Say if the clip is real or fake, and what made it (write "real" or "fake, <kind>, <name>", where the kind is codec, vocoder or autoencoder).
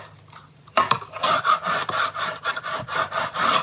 fake, vocoder, BigVGAN v2